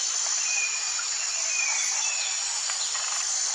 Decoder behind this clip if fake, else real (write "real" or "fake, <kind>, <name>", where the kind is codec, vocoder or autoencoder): real